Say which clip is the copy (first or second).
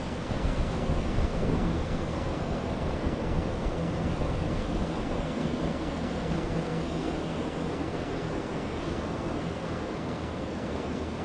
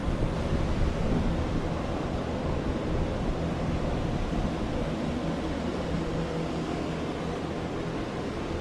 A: first